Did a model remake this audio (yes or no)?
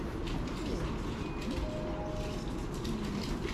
no